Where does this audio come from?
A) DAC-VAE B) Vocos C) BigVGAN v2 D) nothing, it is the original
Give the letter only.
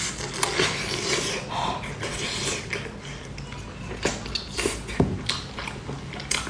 D